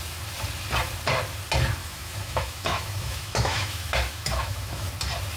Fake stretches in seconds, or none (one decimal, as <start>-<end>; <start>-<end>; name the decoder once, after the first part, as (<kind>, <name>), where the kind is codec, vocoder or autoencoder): 1.8-4.9 (autoencoder, DAC-VAE)

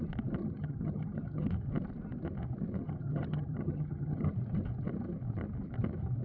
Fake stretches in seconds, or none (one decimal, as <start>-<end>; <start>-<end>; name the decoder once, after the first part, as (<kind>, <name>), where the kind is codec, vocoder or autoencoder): 0.4-1.5 (vocoder, HiFi-GAN); 2.8-4.3

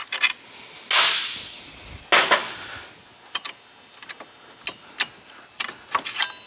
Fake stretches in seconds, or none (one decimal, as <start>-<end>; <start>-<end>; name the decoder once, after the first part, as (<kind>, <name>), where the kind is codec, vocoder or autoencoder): none

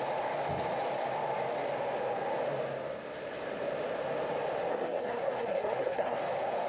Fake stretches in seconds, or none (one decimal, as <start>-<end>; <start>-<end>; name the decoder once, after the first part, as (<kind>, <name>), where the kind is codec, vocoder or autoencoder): 4.7-6.2 (codec, SNAC)

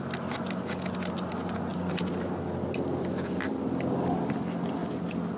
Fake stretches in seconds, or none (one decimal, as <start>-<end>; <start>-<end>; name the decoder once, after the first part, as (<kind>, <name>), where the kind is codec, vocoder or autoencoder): none